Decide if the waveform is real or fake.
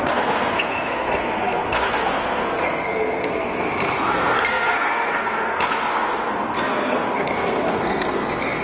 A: fake